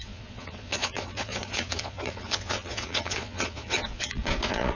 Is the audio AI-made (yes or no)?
yes